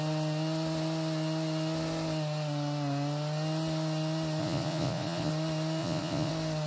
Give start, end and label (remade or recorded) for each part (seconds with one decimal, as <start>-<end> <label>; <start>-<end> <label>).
0.0-4.4 recorded; 4.4-5.3 remade; 5.3-5.8 recorded; 5.8-6.3 remade; 6.3-6.7 recorded